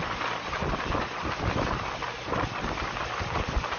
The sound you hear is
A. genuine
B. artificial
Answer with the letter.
A